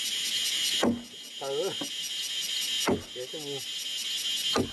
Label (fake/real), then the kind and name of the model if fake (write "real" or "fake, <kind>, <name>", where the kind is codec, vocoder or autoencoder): real